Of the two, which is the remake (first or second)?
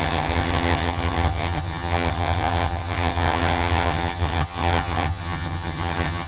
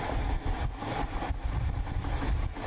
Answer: first